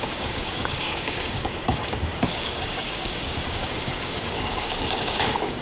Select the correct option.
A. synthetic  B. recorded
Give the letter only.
A